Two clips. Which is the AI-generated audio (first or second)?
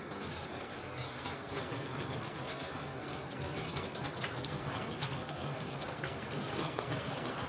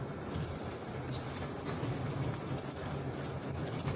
first